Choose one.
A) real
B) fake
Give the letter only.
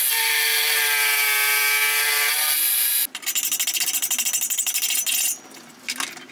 A